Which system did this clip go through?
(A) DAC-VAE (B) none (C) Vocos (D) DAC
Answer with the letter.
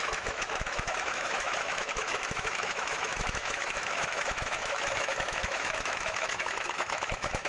A